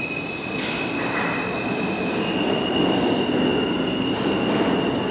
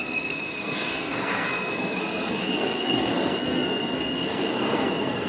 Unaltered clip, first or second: first